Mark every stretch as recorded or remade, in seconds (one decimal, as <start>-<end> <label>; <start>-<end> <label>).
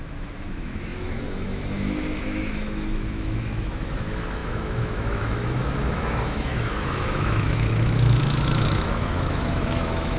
0.0-10.2 remade